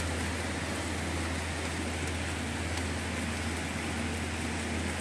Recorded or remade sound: recorded